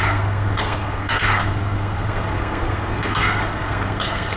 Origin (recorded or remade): remade